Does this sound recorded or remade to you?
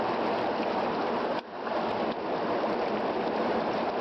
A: recorded